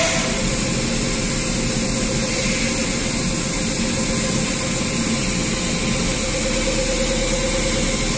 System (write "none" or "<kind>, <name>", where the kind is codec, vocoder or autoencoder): none